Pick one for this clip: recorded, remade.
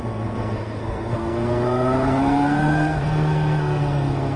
remade